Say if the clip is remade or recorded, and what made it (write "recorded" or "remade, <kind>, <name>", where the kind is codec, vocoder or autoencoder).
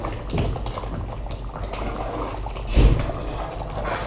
recorded